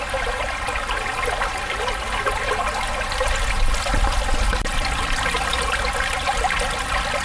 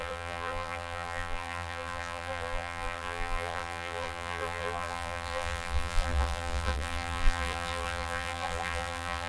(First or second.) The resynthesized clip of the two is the second